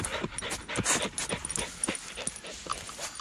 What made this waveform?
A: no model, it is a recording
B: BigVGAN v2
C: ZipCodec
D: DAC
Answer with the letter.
A